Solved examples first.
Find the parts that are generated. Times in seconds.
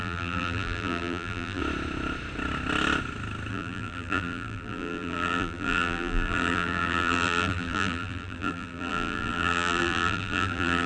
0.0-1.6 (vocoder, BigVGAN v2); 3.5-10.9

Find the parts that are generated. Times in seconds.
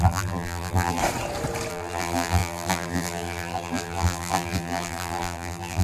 0.0-1.0 (vocoder, BigVGAN v2); 1.7-5.8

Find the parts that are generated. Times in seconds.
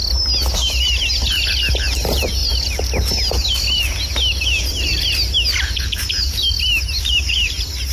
2.0-2.4 (vocoder, BigVGAN v2); 7.0-7.9